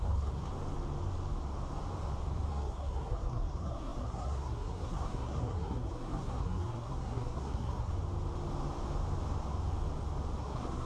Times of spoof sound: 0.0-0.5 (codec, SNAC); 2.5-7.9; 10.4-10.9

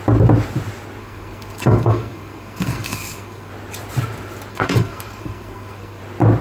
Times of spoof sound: 1.0-3.5 (codec, SNAC); 4.5-6.0

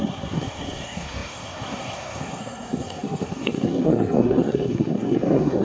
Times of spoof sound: 0.0-5.6 (codec, SNAC)

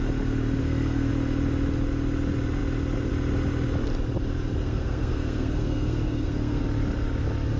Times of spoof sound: 0.6-1.1 (codec, SNAC); 4.6-6.6